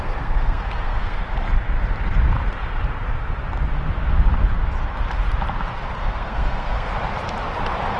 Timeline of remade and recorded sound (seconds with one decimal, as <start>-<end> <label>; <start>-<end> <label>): 0.0-1.2 remade; 1.2-6.0 recorded; 6.0-6.9 remade; 6.9-8.0 recorded

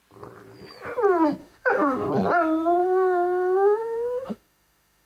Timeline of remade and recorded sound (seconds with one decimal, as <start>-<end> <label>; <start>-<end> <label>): 0.0-1.4 recorded; 1.4-2.1 remade; 2.1-2.8 recorded; 2.8-5.1 remade

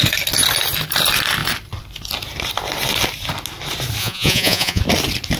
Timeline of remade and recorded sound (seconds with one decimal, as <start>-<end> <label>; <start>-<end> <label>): 0.0-4.0 recorded; 4.0-4.8 remade; 4.8-5.4 recorded

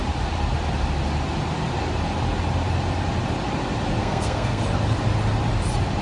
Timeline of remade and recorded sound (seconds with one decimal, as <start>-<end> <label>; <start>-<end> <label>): 0.0-4.0 recorded; 4.0-4.6 remade; 4.6-6.0 recorded

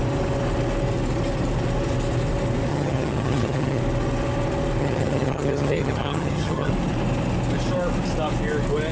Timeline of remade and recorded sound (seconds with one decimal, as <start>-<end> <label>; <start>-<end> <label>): 0.0-2.7 recorded; 2.7-3.8 remade; 3.8-4.8 recorded; 4.8-6.7 remade; 6.7-8.9 recorded

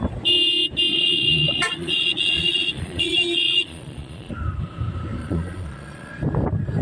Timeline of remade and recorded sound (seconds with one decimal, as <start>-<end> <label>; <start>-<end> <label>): 0.0-0.9 recorded; 0.9-4.3 remade; 4.3-5.2 recorded; 5.2-6.1 remade; 6.1-6.8 recorded